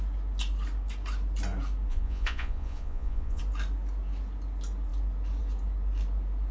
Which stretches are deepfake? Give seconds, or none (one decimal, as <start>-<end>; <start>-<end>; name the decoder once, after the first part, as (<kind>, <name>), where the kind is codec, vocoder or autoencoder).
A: 1.9-3.4 (vocoder, Vocos)